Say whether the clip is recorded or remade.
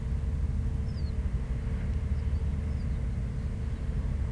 recorded